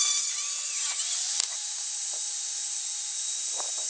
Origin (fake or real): fake